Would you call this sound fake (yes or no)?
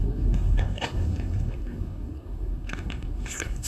yes